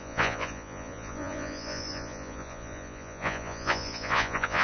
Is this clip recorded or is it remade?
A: remade